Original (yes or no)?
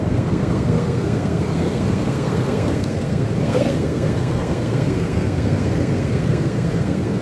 no